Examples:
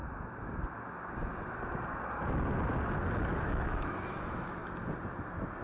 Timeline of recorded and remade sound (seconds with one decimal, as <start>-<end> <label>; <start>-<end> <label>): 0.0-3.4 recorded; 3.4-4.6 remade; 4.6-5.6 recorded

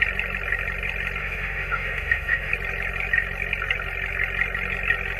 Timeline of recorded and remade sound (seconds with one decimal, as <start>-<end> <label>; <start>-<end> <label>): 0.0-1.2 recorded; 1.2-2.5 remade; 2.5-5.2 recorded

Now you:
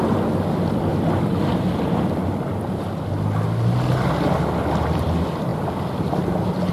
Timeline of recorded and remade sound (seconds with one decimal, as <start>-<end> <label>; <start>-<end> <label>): 0.0-0.9 recorded; 0.9-2.2 remade; 2.2-5.5 recorded; 5.5-6.2 remade; 6.2-6.7 recorded

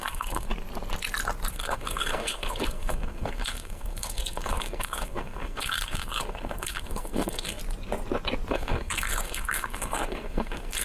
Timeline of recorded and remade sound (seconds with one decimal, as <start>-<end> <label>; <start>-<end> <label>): 0.0-0.5 remade; 0.5-1.5 recorded; 1.5-7.6 remade; 7.6-8.5 recorded; 8.5-10.8 remade

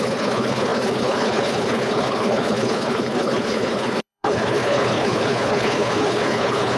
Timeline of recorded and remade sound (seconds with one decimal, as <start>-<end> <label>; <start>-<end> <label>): 0.0-6.8 remade

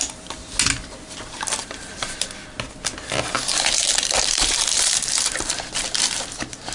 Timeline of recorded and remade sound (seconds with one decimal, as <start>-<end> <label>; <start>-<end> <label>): 0.0-1.6 recorded; 1.6-2.1 remade; 2.1-3.3 recorded; 3.3-5.5 remade; 5.5-6.7 recorded

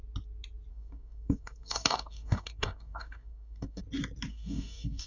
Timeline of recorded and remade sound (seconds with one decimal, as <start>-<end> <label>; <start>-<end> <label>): 0.0-0.7 recorded; 0.7-3.8 remade; 3.8-4.3 recorded; 4.3-5.1 remade

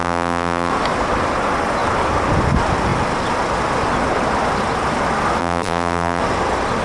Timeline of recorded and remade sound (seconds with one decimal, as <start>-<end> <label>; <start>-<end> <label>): 0.0-0.7 remade; 0.7-5.4 recorded; 5.4-6.2 remade; 6.2-6.8 recorded